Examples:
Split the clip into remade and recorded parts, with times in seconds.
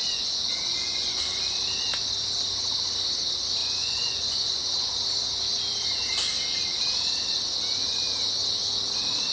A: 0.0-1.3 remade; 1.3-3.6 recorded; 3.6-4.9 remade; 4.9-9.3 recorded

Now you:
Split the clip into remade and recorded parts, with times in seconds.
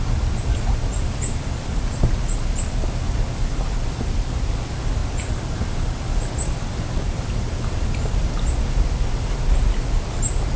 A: 0.0-10.6 recorded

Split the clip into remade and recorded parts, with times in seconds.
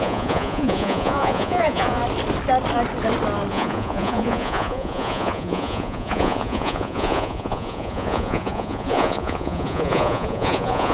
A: 0.0-2.0 remade; 2.0-3.5 recorded; 3.5-10.9 remade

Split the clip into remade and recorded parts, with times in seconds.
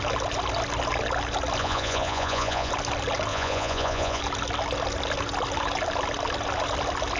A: 0.0-1.6 recorded; 1.6-2.7 remade; 2.7-3.3 recorded; 3.3-4.2 remade; 4.2-7.2 recorded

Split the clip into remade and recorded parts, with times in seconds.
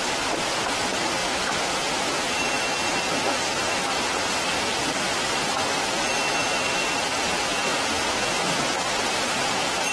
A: 0.0-1.2 recorded; 1.2-2.3 remade; 2.3-7.6 recorded; 7.6-8.6 remade; 8.6-9.9 recorded